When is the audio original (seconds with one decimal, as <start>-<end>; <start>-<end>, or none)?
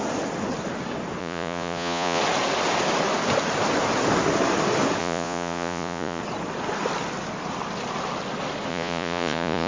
0.0-1.2; 2.2-5.0; 6.2-8.7